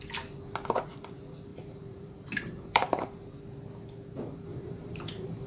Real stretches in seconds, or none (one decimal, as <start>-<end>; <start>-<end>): 0.0-1.5; 2.9-4.5